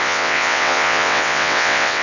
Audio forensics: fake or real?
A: fake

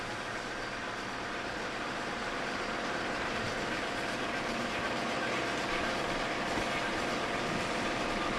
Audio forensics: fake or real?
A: fake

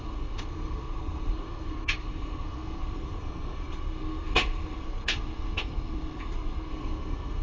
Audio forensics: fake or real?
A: fake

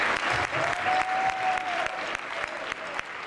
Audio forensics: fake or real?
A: real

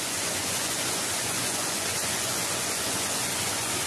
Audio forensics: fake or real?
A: fake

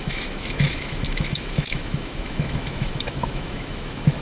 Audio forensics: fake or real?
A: fake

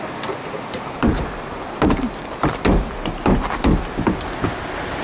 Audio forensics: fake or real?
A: real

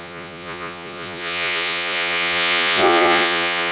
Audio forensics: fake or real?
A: fake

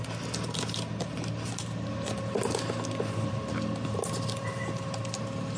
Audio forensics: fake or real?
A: real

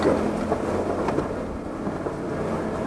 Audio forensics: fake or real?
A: real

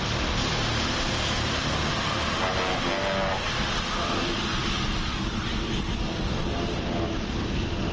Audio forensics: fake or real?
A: real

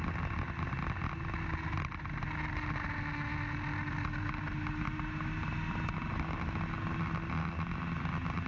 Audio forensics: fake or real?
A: real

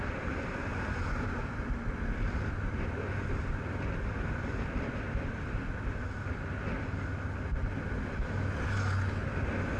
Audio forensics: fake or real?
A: real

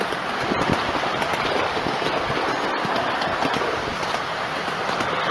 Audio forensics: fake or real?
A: real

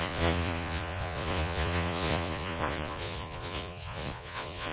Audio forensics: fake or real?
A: fake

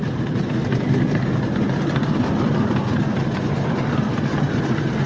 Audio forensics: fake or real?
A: real